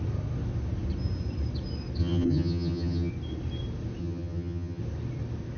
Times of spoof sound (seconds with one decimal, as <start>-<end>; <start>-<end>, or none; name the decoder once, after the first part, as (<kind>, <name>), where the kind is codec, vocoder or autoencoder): 2.0-3.1 (vocoder, HiFi-GAN); 4.0-4.8